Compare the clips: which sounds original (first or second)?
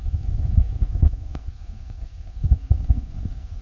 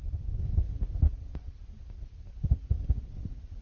second